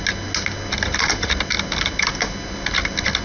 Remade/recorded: recorded